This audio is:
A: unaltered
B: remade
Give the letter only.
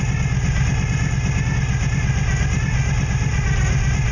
A